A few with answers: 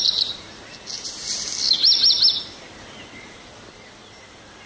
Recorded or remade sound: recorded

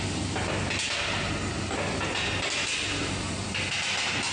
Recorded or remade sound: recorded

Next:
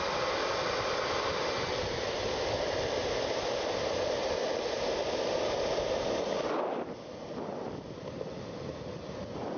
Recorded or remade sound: recorded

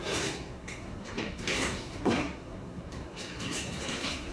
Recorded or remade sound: remade